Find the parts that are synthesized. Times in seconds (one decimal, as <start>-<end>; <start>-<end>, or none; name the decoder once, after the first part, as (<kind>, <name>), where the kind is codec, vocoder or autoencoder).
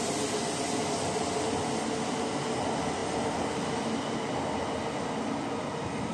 none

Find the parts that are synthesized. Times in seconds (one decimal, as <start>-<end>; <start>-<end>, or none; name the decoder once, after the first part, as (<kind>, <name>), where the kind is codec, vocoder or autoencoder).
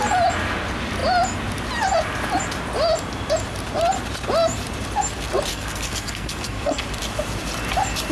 5.5-6.8 (codec, SNAC)